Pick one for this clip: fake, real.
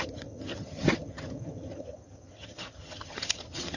fake